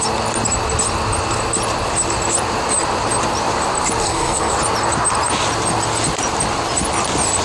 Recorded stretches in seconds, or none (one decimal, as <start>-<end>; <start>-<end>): 0.0-4.0; 4.5-7.4